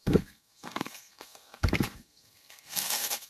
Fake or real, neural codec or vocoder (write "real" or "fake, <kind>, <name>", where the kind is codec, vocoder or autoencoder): fake, codec, SNAC